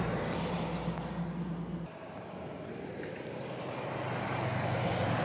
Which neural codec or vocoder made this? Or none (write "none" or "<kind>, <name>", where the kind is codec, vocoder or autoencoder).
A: none